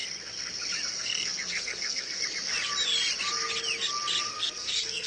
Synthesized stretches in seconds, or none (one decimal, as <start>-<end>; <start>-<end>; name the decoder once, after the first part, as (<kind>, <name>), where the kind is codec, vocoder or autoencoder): 0.9-2.2 (codec, SNAC); 4.3-5.1

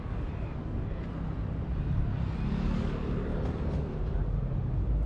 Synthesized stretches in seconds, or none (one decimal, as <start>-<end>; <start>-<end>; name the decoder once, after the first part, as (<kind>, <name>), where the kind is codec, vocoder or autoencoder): 0.0-0.6 (codec, DAC); 2.5-3.3

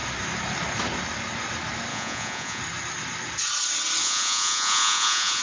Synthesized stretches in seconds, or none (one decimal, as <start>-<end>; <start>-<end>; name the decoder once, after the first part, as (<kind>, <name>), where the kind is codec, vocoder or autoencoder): 1.9-2.6 (vocoder, Vocos); 4.0-5.4

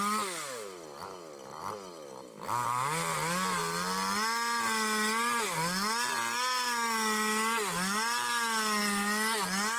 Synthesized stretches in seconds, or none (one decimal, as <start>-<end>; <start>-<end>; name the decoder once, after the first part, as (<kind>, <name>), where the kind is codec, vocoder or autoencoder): none

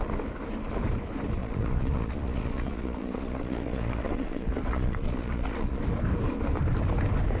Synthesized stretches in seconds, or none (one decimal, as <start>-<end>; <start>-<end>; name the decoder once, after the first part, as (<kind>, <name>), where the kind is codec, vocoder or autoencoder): 1.4-5.8 (vocoder, Vocos)

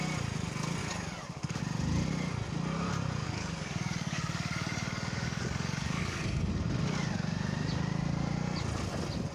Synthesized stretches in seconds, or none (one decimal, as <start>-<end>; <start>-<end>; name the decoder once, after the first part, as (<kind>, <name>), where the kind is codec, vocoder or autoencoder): 0.8-1.6 (codec, DAC); 3.2-6.5